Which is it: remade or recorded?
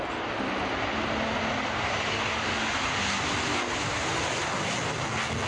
recorded